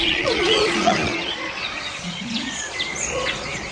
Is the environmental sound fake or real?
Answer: fake